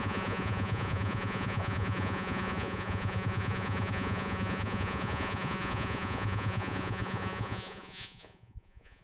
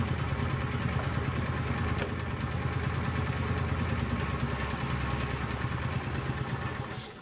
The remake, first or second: first